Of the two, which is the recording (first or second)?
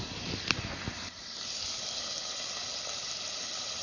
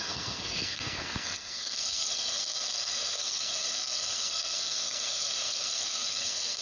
first